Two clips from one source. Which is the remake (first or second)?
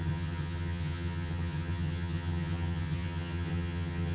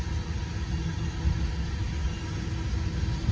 first